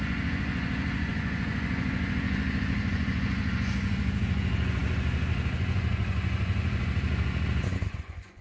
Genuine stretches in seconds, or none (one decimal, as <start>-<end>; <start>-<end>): none